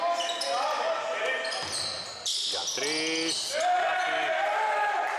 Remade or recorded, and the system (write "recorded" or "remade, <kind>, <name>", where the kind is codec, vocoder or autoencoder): recorded